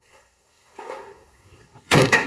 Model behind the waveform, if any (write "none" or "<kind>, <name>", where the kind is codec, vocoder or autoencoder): codec, SNAC